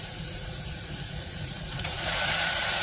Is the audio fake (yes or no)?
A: yes